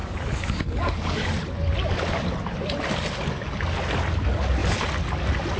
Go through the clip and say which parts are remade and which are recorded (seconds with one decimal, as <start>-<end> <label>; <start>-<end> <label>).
0.0-1.3 remade; 1.3-5.6 recorded